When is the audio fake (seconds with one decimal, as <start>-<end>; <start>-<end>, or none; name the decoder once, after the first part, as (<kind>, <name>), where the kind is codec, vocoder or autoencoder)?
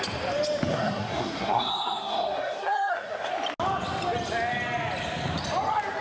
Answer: 0.7-3.3 (codec, SNAC)